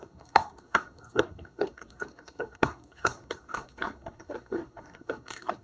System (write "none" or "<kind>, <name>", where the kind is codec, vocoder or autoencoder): codec, SNAC